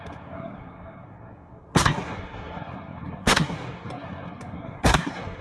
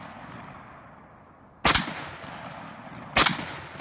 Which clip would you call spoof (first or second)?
first